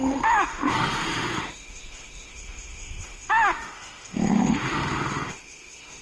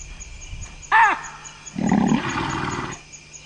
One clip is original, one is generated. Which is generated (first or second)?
first